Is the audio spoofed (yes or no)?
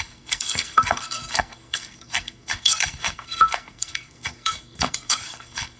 yes